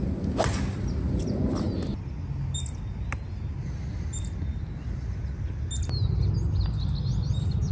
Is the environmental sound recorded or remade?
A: recorded